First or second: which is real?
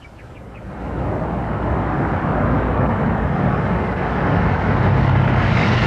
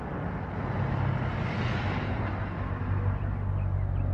second